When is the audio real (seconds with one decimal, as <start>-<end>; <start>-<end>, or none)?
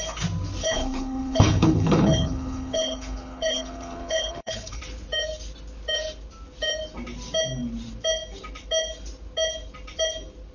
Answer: 0.0-0.6; 4.8-10.5